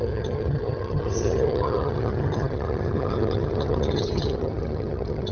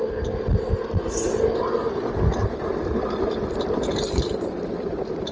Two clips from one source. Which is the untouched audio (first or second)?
second